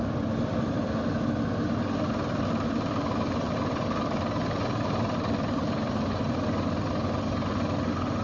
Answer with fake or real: real